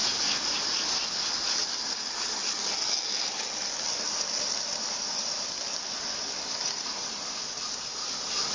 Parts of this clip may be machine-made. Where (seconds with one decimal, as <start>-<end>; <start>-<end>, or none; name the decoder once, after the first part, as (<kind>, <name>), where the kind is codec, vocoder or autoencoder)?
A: none

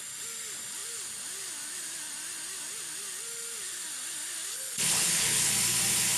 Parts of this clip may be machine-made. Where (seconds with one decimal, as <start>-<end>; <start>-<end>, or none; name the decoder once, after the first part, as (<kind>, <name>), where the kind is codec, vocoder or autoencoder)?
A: 4.5-5.5 (codec, HILCodec)

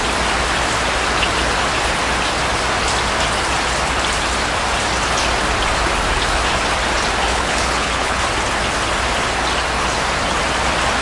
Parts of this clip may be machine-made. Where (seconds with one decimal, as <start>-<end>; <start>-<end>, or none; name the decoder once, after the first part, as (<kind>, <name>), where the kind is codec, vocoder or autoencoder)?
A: 7.3-8.2 (codec, HILCodec)

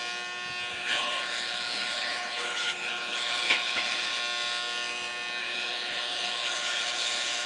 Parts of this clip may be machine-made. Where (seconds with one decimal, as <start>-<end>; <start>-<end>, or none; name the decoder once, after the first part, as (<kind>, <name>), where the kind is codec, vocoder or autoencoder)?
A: 0.7-4.2 (codec, HILCodec); 5.4-7.5

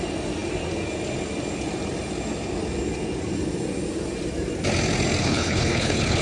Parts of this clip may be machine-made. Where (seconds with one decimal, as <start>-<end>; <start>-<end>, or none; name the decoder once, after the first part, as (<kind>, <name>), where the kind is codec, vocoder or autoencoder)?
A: 5.2-6.2 (codec, HILCodec)

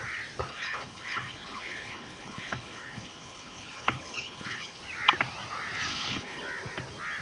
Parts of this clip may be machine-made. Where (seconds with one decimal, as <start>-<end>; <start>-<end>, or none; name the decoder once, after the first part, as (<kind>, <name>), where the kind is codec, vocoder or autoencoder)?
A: 0.5-4.8 (codec, HILCodec); 5.9-6.4